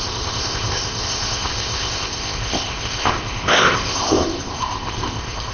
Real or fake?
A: fake